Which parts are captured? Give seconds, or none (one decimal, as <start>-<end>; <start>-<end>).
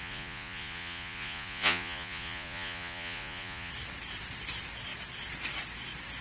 3.7-6.2